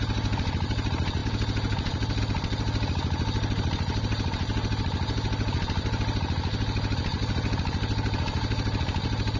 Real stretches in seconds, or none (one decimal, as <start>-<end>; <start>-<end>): 0.0-9.4